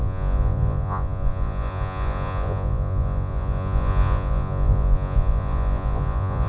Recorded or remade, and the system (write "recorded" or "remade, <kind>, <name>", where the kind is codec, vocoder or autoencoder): remade, vocoder, Vocos